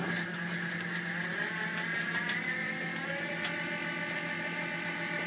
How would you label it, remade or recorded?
recorded